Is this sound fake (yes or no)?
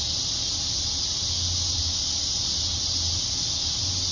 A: no